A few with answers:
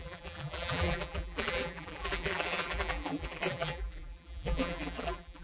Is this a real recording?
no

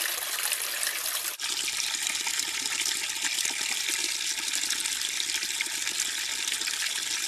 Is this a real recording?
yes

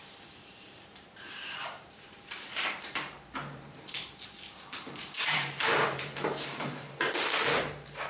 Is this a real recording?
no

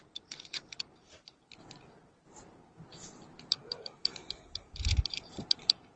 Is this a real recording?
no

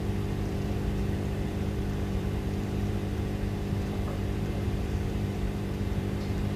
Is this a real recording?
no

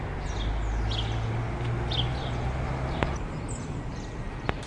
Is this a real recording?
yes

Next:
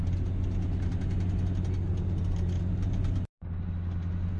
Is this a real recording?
yes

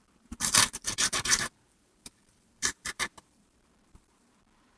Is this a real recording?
no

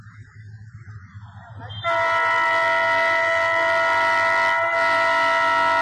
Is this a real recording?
yes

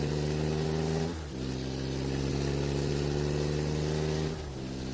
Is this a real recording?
yes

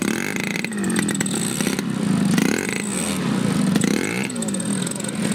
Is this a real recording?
yes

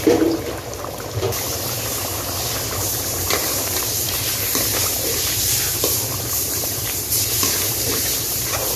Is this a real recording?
no